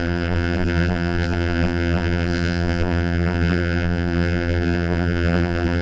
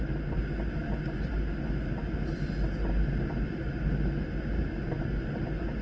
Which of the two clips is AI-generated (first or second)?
first